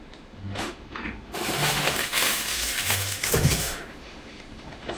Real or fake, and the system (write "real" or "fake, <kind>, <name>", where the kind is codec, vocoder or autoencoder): fake, autoencoder, DAC-VAE